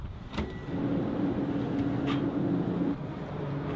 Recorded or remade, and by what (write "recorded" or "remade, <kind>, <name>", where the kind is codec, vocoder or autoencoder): recorded